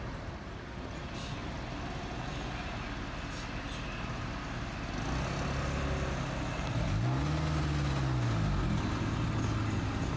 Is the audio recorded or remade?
recorded